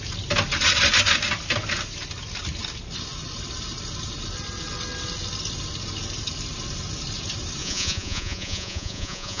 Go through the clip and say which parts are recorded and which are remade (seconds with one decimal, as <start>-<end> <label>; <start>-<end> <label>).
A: 0.0-7.6 recorded; 7.6-9.4 remade